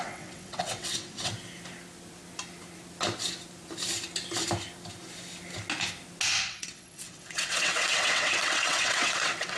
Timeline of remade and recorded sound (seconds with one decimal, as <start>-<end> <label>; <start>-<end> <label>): 0.0-1.3 remade; 1.3-6.5 recorded; 6.5-9.6 remade